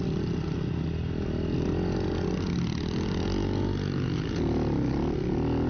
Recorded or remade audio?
recorded